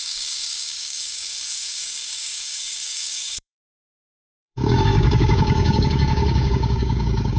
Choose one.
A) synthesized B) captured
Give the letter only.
A